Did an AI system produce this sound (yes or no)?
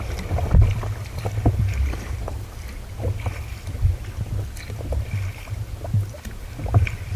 no